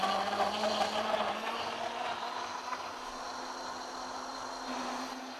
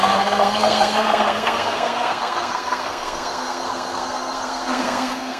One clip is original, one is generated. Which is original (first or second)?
first